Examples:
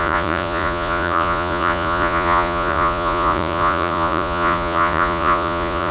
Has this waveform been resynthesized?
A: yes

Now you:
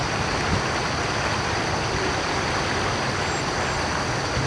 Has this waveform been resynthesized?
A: no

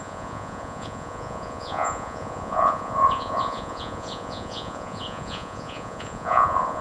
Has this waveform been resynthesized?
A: yes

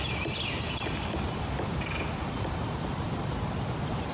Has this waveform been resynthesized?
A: no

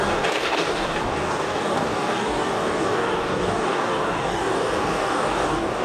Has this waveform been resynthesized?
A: yes